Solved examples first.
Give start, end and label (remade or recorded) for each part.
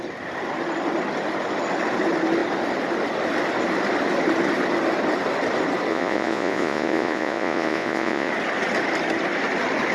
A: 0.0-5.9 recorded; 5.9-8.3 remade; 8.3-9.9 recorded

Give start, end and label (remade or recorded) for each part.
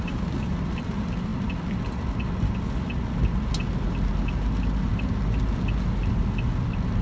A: 0.0-7.0 recorded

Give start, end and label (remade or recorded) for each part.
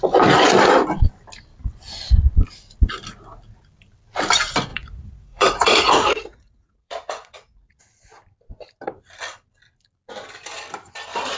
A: 0.0-4.7 recorded; 4.7-7.8 remade; 7.8-11.4 recorded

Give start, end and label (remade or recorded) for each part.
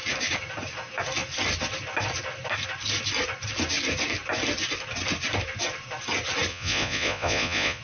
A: 0.0-6.5 recorded; 6.5-7.8 remade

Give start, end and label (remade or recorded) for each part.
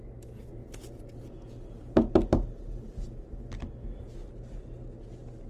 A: 0.0-0.5 recorded; 0.5-2.1 remade; 2.1-5.5 recorded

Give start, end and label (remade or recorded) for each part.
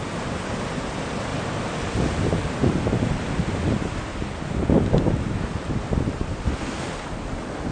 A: 0.0-7.7 recorded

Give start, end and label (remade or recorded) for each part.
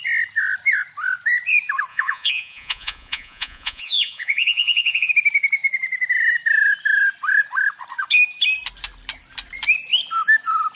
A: 0.0-1.9 recorded; 1.9-5.1 remade; 5.1-10.8 recorded